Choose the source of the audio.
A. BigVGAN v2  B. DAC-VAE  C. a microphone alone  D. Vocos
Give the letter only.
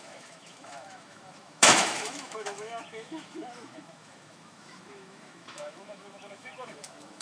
B